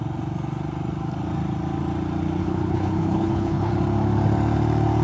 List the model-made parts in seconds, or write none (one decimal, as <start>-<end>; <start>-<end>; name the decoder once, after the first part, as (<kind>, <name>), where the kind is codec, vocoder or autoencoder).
2.4-3.7 (codec, HILCodec)